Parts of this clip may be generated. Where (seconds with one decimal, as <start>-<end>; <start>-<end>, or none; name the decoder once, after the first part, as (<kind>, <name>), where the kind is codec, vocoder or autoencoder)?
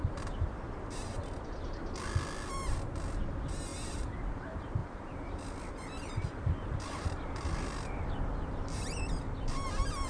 3.7-4.3 (vocoder, BigVGAN v2); 4.8-9.1